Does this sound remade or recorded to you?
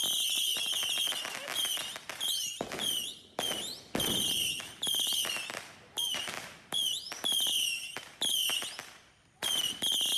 recorded